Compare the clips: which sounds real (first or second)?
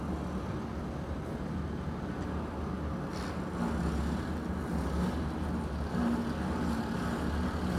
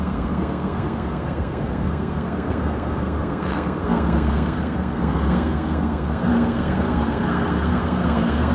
first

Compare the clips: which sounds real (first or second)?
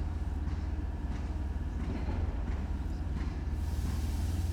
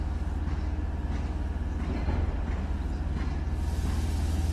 second